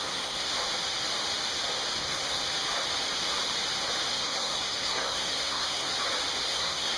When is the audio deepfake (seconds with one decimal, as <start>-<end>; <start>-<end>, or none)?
0.0-0.5; 2.0-2.4; 4.1-5.9; 6.4-7.0